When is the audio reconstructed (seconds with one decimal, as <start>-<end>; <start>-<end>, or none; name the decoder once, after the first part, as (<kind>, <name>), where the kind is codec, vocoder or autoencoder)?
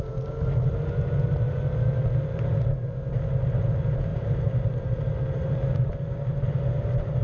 4.1-5.9 (vocoder, BigVGAN v2)